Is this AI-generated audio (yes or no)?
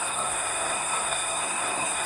yes